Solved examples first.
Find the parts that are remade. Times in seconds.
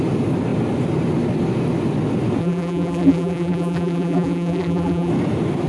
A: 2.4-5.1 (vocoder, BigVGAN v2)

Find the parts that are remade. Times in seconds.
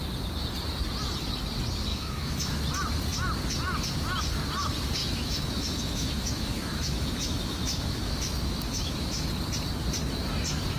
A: 1.9-2.6 (autoencoder, DAC-VAE); 5.0-9.3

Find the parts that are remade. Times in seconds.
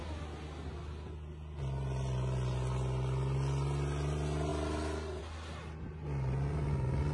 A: none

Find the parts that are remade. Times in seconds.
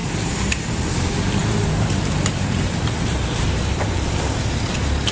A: 0.0-0.6 (vocoder, BigVGAN v2); 1.4-4.1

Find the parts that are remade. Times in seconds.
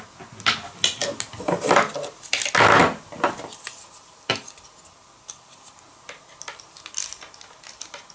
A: none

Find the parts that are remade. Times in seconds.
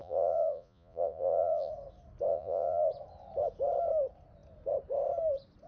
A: 0.0-1.7 (vocoder, Vocos); 2.3-2.9